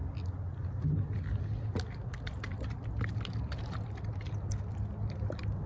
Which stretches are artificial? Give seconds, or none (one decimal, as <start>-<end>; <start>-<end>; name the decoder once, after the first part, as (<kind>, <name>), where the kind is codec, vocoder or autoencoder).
none